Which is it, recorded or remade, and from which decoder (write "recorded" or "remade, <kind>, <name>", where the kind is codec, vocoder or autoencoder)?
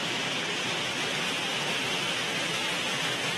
remade, vocoder, BigVGAN v2